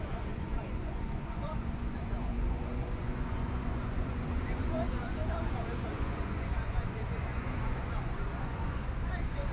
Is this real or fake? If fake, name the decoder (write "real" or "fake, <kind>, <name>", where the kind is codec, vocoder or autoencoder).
fake, vocoder, Vocos